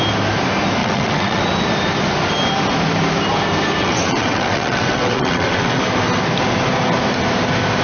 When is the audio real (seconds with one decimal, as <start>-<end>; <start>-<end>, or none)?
0.0-0.8; 1.4-3.8; 5.8-7.8